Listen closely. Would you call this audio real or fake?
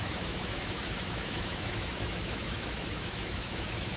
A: fake